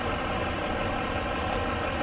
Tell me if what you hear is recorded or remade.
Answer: remade